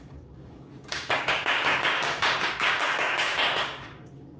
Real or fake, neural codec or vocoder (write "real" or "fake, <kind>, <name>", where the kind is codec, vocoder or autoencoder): fake, codec, DAC